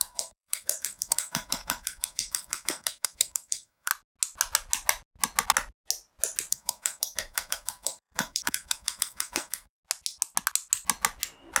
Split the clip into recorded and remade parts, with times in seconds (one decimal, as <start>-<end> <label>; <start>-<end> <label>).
0.0-3.9 remade; 3.9-6.5 recorded; 6.5-9.8 remade; 9.8-11.6 recorded